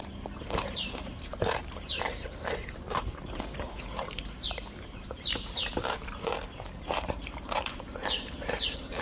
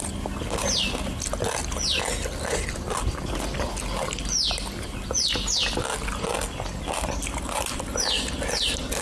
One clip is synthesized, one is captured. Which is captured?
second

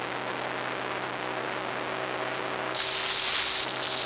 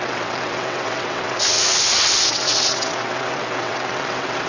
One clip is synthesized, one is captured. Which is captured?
first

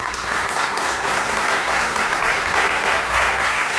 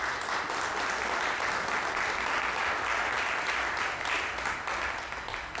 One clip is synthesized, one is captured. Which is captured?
second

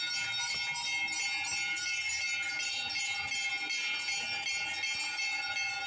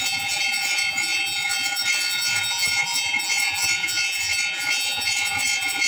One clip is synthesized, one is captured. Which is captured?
first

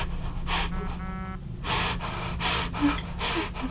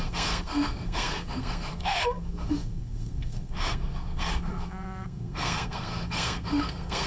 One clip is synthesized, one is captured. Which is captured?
first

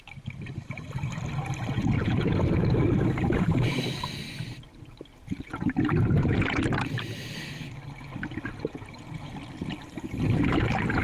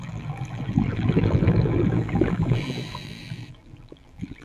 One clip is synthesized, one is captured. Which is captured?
first